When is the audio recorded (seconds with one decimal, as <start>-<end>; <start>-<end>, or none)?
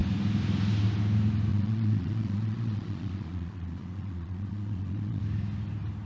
0.0-1.5; 5.2-6.1